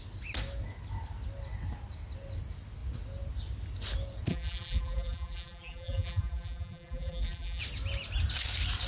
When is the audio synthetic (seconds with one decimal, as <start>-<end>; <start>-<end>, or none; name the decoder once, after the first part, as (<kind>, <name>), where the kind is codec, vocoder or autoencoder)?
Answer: 4.3-7.6 (vocoder, BigVGAN v2)

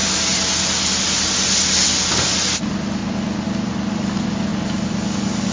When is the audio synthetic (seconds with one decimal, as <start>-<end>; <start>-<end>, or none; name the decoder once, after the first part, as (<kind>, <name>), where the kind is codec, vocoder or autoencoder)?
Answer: 2.1-3.0 (vocoder, BigVGAN v2); 3.9-4.5

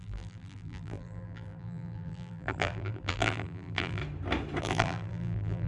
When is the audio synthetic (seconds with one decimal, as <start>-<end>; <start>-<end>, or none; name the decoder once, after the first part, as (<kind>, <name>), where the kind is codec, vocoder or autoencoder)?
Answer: 0.0-4.0 (vocoder, BigVGAN v2); 4.6-5.7

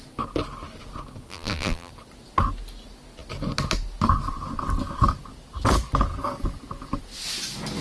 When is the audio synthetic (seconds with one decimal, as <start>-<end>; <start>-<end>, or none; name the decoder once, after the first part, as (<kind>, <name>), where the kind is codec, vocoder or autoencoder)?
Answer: 1.3-1.9 (vocoder, BigVGAN v2)

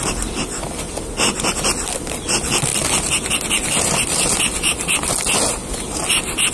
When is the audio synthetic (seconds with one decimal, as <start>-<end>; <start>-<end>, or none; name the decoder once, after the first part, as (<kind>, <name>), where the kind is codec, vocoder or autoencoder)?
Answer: 2.7-5.1 (vocoder, BigVGAN v2)

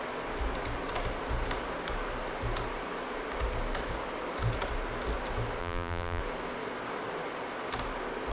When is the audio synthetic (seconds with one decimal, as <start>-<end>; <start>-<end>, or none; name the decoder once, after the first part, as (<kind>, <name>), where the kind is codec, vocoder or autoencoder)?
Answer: 5.6-6.2 (vocoder, BigVGAN v2)